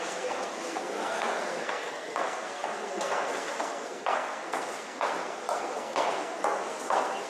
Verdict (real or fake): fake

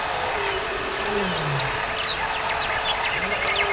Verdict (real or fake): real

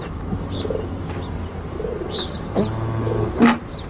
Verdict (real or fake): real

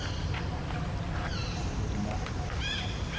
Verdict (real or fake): real